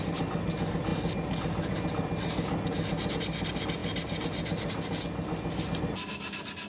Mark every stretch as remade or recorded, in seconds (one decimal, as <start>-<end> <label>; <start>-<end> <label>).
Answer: 0.0-6.7 recorded